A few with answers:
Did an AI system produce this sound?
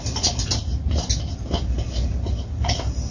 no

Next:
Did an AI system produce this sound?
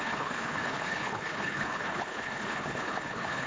yes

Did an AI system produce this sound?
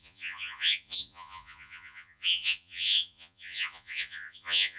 yes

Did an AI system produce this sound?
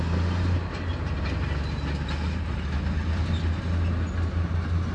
no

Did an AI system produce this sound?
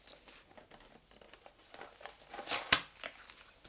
no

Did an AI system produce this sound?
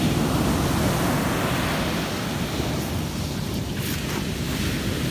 no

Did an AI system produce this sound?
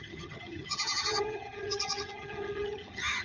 yes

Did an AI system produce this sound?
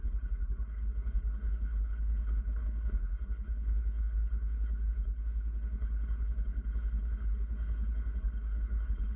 yes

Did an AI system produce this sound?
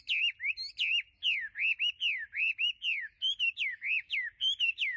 no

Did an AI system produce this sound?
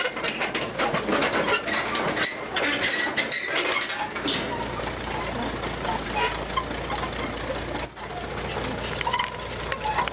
no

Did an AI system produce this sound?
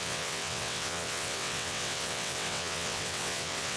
yes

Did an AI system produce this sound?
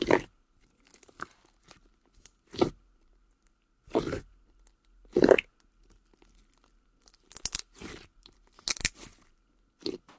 no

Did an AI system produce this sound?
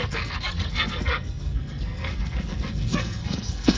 yes